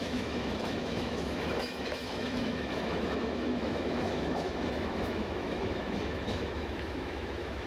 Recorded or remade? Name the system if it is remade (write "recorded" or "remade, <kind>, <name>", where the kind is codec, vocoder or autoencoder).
remade, autoencoder, DAC-VAE